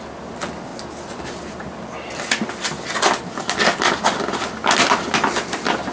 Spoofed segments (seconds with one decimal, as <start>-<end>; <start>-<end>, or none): none